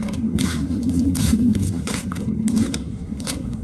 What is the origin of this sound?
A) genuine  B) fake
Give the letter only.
B